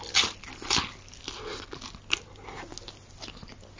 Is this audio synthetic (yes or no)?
no